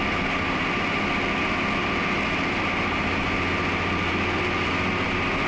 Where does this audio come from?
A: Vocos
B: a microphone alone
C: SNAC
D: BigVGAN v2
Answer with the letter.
B